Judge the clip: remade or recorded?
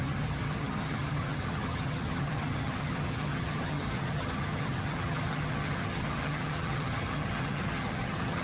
remade